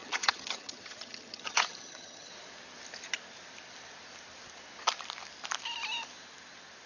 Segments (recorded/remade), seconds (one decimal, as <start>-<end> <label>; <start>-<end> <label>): 0.0-2.3 remade; 2.3-6.9 recorded